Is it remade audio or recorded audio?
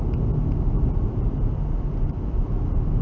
recorded